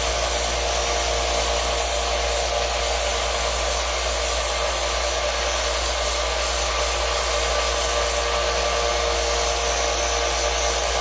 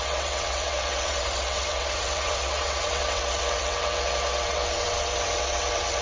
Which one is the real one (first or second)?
first